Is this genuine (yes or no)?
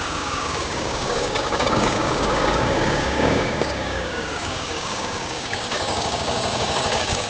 no